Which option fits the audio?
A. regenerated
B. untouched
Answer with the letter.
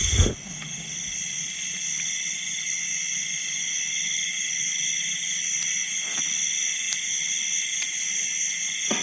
B